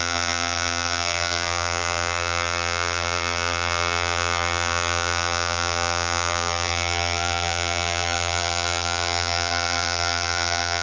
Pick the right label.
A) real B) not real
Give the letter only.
B